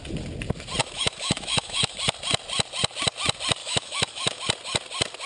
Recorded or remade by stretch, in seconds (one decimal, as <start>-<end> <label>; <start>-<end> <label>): 0.0-0.8 recorded; 0.8-2.0 remade; 2.0-3.6 recorded; 3.6-4.4 remade; 4.4-5.3 recorded